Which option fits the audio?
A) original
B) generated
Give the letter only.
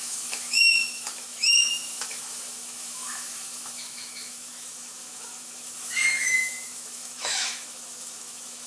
B